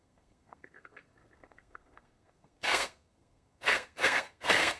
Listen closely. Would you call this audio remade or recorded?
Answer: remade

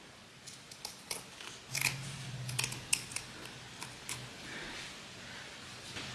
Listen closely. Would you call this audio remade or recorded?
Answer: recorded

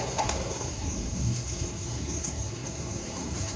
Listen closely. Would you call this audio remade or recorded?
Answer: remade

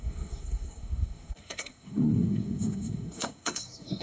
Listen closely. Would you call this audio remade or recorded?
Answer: remade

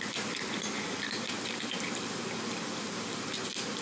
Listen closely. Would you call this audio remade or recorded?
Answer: recorded